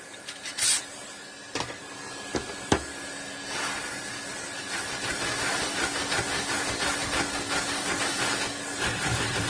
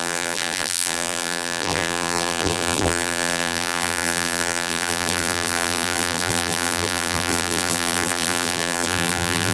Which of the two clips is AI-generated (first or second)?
second